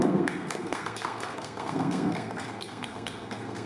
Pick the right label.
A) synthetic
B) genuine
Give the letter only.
A